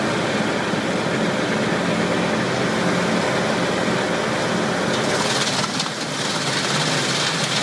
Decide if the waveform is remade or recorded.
recorded